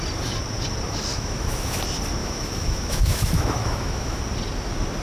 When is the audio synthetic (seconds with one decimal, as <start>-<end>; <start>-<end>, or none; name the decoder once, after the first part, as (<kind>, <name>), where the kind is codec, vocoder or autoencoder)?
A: 1.1-1.8 (autoencoder, DAC-VAE); 2.2-4.2